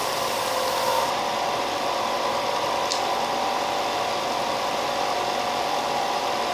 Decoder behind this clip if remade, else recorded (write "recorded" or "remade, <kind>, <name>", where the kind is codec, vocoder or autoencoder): recorded